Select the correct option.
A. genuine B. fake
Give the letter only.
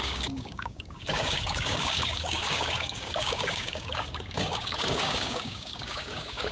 B